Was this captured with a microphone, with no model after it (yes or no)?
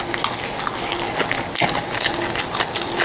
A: yes